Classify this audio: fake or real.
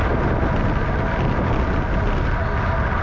real